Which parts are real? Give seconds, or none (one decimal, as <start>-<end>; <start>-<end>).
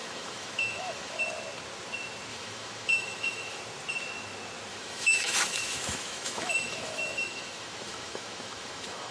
1.2-2.3; 3.6-4.7